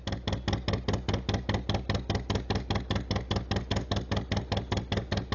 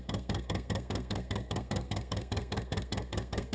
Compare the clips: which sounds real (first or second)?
first